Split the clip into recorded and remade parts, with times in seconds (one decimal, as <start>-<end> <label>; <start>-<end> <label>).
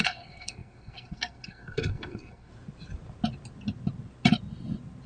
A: 0.0-2.5 remade; 2.5-5.1 recorded